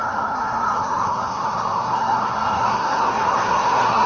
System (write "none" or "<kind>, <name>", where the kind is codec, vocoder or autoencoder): codec, SNAC